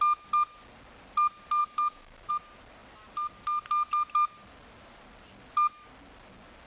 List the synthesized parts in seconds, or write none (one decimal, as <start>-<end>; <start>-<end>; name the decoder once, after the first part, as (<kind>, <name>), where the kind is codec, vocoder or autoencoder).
1.6-2.3 (autoencoder, DAC-VAE)